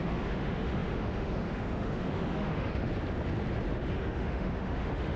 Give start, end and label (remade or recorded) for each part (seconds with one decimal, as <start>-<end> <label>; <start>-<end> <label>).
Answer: 0.0-2.9 remade; 2.9-3.7 recorded; 3.7-5.2 remade